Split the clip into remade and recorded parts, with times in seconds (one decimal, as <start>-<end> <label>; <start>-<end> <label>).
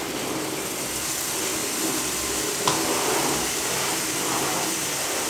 0.0-5.3 recorded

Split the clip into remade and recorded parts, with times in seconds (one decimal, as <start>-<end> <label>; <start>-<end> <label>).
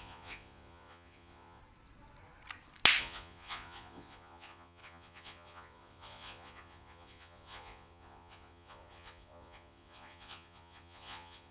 0.0-1.6 remade; 1.6-3.0 recorded; 3.0-11.5 remade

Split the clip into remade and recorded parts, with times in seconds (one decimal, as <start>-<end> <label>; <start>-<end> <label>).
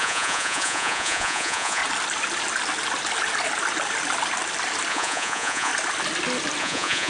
0.0-1.8 remade; 1.8-4.9 recorded; 4.9-5.7 remade; 5.7-6.6 recorded; 6.6-7.1 remade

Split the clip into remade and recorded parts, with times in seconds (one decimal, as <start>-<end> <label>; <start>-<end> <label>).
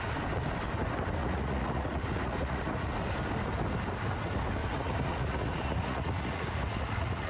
0.0-1.2 recorded; 1.2-2.9 remade; 2.9-4.6 recorded; 4.6-7.3 remade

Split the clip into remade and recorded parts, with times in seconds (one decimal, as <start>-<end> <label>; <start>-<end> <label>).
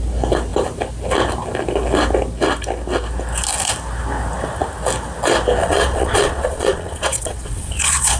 0.0-5.6 recorded; 5.6-8.2 remade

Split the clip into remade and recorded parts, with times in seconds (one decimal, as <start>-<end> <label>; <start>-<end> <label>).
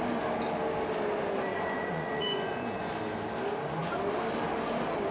0.0-1.5 recorded; 1.5-2.9 remade; 2.9-5.1 recorded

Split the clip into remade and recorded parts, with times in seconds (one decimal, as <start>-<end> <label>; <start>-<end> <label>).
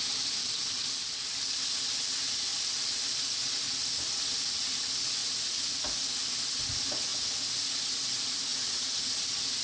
0.0-5.2 recorded; 5.2-6.0 remade; 6.0-7.1 recorded; 7.1-7.8 remade; 7.8-8.5 recorded; 8.5-9.1 remade; 9.1-9.6 recorded